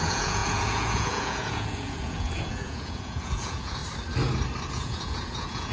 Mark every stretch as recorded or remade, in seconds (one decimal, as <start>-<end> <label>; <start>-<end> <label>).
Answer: 0.0-3.8 remade; 3.8-4.7 recorded; 4.7-5.7 remade